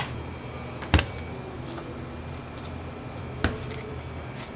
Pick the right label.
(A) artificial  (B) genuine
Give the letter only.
B